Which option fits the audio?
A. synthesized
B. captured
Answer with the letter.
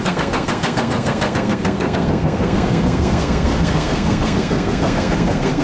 A